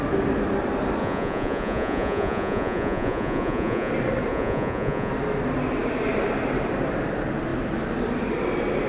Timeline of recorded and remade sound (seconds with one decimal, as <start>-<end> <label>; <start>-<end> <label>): 0.0-1.0 recorded; 1.0-3.9 remade; 3.9-4.3 recorded; 4.3-5.1 remade; 5.1-8.9 recorded